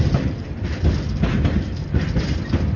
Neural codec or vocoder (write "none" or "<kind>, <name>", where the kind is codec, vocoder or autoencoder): none